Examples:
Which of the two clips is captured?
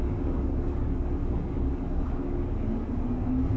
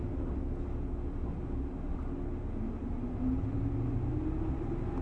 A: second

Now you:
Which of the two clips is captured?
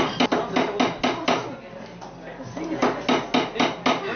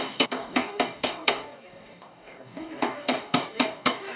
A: first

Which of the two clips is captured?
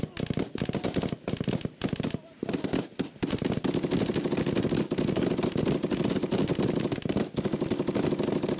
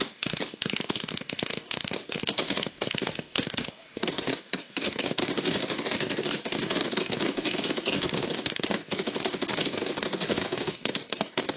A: first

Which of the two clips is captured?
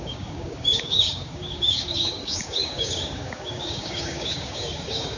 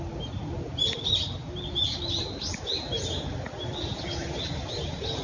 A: second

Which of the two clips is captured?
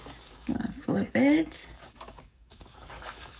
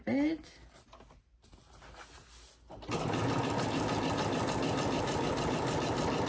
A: second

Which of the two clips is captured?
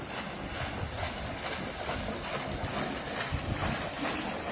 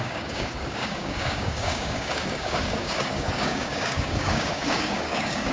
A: first